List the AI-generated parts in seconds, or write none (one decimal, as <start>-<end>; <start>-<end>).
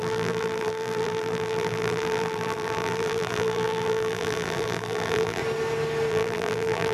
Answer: 0.0-5.4; 6.1-6.9